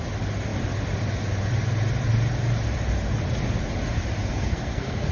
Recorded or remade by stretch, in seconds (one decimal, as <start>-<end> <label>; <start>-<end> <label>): 0.0-4.3 recorded; 4.3-5.1 remade